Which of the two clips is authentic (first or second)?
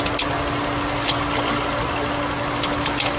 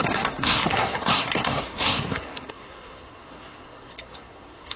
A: first